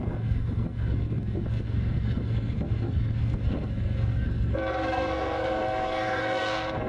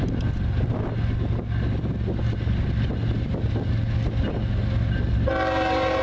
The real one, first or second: second